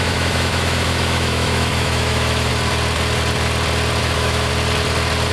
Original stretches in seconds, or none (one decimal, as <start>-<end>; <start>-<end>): 2.5-4.0; 4.5-5.3